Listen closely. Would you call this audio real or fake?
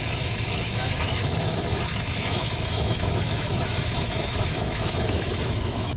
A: fake